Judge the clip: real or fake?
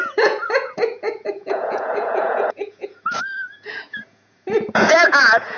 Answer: fake